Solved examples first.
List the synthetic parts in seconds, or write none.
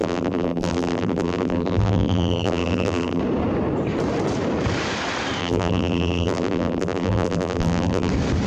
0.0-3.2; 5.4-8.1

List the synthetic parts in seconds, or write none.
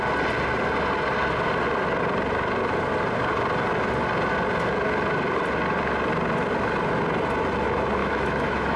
8.0-8.8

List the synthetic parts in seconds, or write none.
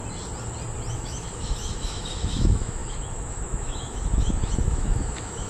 0.9-5.5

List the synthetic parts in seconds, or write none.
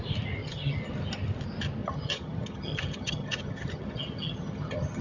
0.4-0.9; 1.8-5.0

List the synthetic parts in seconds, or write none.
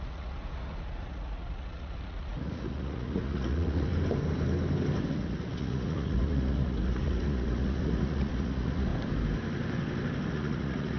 0.0-3.9; 5.1-8.9; 10.3-11.0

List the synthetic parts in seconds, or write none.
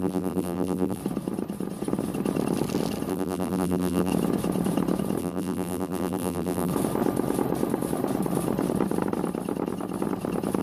0.0-1.0; 3.1-4.1; 5.2-6.7